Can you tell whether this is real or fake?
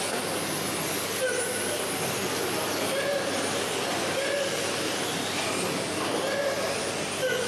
real